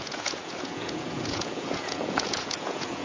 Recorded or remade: remade